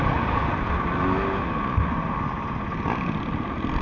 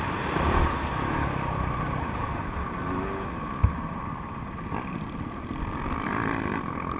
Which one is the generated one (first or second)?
second